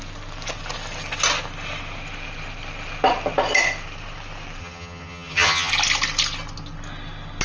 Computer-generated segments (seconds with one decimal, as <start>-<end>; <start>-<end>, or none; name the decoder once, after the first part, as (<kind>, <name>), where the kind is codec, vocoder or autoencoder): 4.6-5.7 (vocoder, HiFi-GAN)